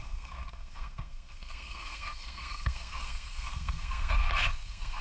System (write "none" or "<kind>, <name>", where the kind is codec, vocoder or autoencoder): codec, SNAC